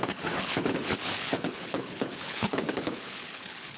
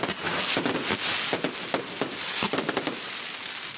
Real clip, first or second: second